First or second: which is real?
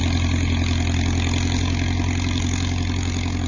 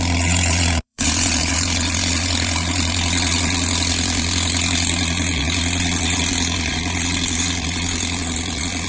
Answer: first